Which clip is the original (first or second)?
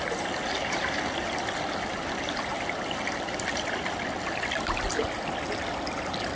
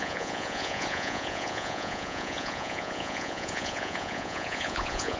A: first